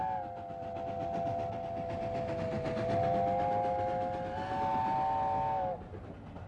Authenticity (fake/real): real